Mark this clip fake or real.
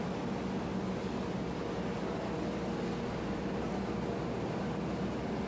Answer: real